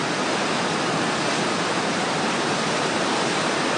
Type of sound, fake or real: real